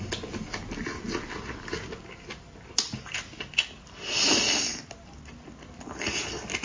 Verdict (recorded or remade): recorded